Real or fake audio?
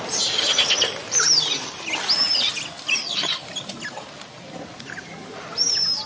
real